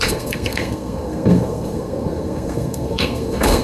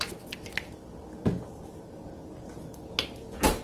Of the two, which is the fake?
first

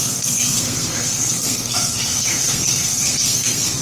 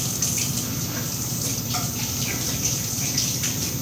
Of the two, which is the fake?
first